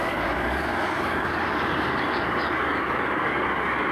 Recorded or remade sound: remade